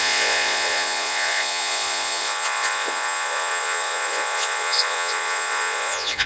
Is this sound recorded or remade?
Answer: remade